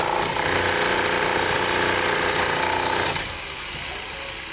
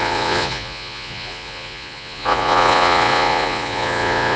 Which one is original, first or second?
first